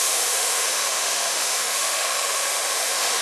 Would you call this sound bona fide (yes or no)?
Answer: no